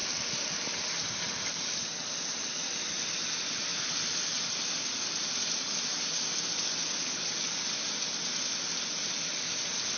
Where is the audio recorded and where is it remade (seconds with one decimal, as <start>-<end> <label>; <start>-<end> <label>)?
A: 0.0-10.0 recorded